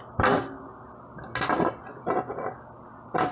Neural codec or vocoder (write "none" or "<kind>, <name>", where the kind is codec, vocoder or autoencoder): none